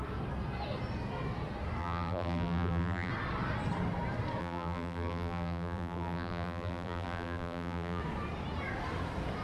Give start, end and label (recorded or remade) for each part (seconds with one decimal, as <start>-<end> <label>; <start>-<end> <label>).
0.0-1.8 recorded; 1.8-3.1 remade; 3.1-4.4 recorded; 4.4-8.0 remade; 8.0-9.4 recorded